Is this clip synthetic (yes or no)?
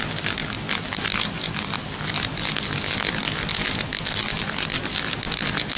no